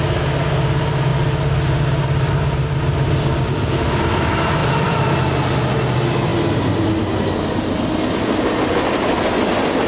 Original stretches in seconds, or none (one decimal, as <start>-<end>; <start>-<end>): 0.0-4.6; 5.2-9.9